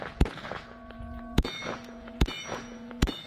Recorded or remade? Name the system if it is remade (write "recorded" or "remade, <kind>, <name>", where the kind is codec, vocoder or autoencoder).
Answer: remade, vocoder, Vocos